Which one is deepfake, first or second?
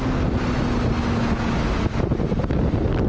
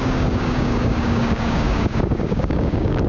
second